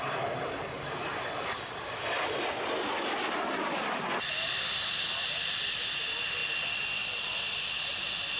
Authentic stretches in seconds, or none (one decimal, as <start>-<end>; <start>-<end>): 0.0-8.4